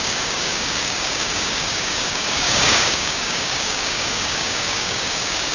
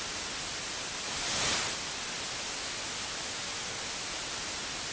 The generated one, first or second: first